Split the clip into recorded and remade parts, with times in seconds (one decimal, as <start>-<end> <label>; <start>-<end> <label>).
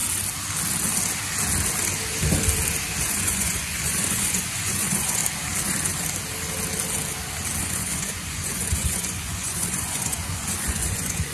0.0-3.0 recorded; 3.0-5.2 remade; 5.2-7.6 recorded; 7.6-11.3 remade